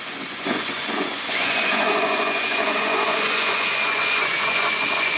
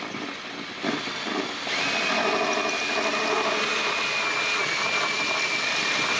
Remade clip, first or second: first